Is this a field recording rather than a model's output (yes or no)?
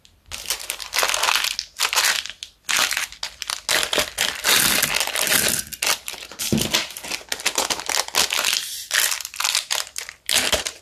yes